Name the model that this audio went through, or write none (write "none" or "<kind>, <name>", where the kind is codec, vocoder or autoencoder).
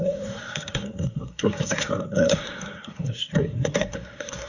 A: codec, SNAC